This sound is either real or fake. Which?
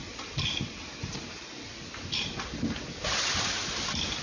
real